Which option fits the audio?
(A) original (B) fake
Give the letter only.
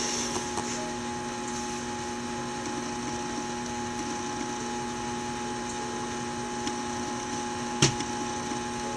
A